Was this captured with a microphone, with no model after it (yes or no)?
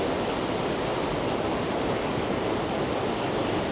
yes